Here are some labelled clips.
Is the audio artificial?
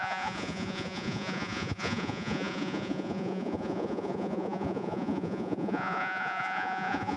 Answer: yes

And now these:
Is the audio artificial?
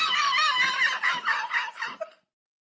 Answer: no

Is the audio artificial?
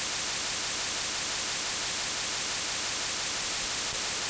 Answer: no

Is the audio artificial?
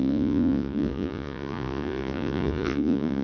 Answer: yes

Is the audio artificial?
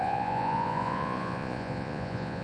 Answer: yes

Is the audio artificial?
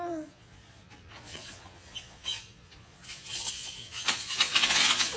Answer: yes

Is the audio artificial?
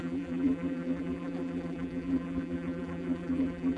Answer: yes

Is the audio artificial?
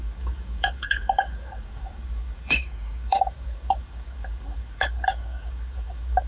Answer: yes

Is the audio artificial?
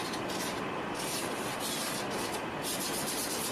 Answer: no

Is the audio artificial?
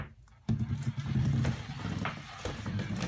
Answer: no